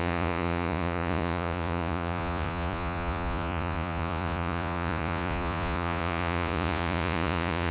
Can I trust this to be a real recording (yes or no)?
no